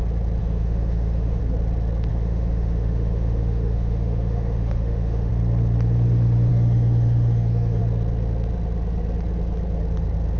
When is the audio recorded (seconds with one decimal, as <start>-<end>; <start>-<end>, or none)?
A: 0.0-0.4; 1.4-2.1; 5.3-6.5; 7.8-10.4